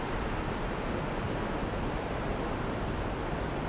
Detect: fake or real real